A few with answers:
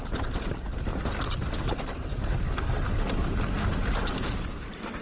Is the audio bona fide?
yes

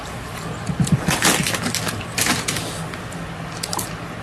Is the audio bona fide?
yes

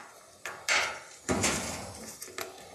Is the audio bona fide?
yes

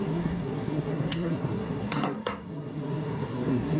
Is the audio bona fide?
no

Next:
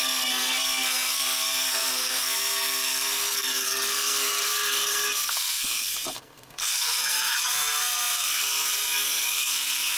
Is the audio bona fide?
no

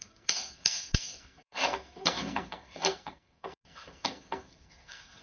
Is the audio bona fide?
no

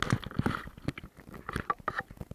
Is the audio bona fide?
yes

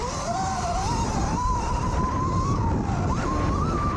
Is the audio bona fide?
yes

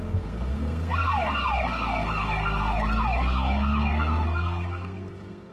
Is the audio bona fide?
no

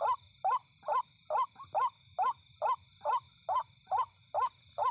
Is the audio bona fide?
yes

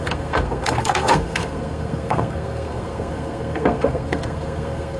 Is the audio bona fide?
no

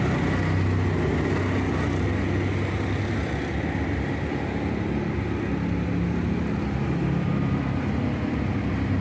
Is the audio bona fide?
yes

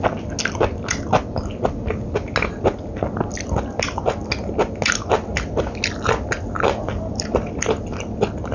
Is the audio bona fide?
yes